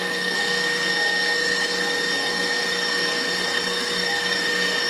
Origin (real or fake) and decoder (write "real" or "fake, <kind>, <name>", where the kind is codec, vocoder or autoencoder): fake, codec, SNAC